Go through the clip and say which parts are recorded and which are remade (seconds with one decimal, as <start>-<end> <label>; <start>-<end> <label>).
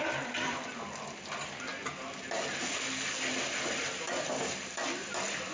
0.0-5.5 recorded